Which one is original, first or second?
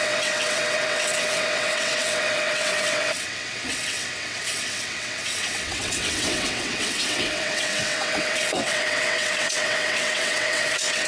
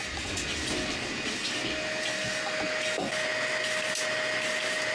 second